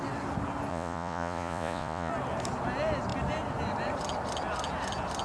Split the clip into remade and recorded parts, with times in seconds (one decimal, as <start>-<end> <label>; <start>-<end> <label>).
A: 0.0-0.7 recorded; 0.7-2.1 remade; 2.1-5.2 recorded